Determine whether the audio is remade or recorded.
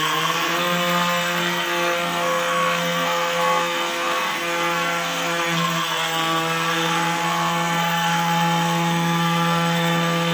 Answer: remade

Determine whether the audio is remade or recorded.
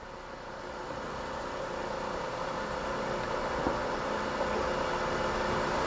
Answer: recorded